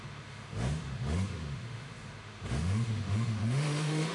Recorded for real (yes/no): no